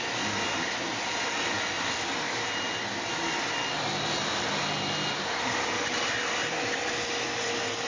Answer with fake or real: real